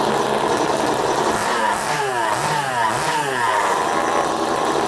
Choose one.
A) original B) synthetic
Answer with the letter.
A